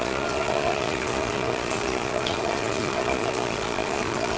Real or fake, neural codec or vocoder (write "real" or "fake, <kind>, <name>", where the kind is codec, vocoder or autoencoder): fake, vocoder, Vocos